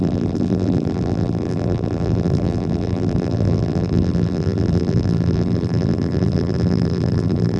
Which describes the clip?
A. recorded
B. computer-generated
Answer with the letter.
B